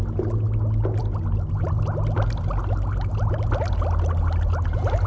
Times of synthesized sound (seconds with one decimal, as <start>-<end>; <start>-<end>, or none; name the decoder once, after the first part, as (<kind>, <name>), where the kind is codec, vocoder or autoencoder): none